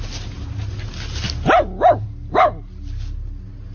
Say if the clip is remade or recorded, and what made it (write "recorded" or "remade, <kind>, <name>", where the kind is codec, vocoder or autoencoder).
recorded